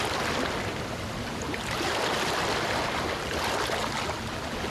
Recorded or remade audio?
recorded